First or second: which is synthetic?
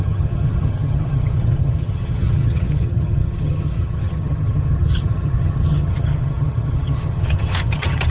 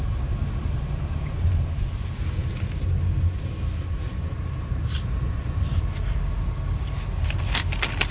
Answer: first